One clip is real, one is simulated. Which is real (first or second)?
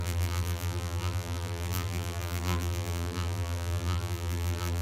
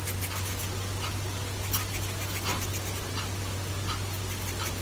second